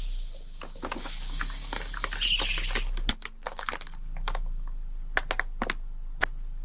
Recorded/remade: recorded